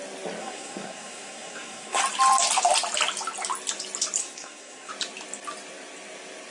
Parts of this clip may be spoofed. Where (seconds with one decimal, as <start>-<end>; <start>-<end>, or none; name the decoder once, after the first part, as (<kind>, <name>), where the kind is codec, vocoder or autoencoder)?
0.4-2.0 (codec, SNAC); 4.2-4.9